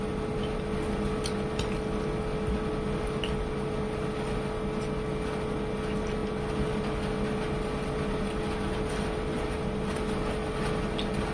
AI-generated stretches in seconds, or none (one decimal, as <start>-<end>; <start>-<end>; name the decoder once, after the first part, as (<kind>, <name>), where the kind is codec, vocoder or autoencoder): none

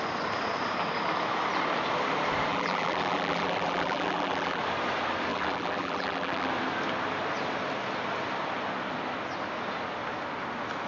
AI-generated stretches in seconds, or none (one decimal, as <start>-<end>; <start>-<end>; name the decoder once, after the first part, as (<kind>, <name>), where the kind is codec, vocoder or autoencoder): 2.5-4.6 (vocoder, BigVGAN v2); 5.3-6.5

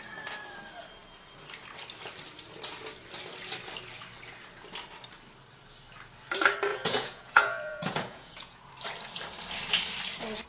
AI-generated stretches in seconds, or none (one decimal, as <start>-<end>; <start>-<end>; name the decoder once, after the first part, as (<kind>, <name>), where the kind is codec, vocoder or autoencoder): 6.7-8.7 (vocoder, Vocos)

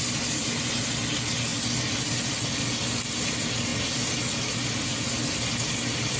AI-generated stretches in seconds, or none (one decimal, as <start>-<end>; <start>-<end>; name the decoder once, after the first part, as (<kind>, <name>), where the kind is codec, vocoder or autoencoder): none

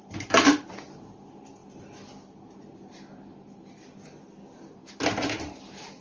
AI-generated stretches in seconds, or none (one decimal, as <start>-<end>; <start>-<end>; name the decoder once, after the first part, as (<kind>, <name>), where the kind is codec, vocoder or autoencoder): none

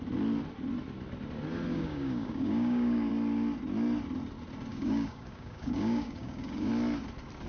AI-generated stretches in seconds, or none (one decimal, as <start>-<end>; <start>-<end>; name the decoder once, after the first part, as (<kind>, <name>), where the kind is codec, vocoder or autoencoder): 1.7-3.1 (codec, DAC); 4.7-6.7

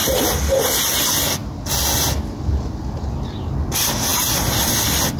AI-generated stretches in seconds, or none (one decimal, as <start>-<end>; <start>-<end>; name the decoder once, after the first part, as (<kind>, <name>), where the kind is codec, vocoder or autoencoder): none

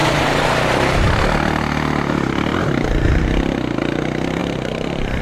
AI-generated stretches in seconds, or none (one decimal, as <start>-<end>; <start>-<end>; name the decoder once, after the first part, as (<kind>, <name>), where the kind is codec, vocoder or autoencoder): 0.0-1.0 (vocoder, BigVGAN v2); 4.4-5.2